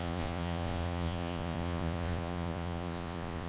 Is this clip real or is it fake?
fake